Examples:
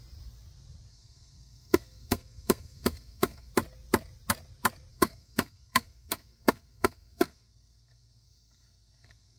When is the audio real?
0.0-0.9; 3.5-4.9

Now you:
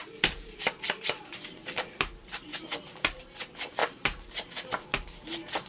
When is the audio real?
2.8-5.7

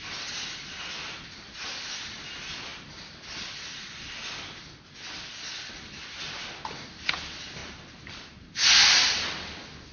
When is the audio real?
0.0-9.9

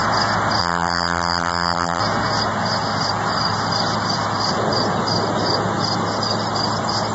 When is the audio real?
0.0-0.6; 2.0-7.1